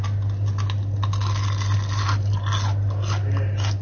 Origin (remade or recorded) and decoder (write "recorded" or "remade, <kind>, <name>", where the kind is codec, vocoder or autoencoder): recorded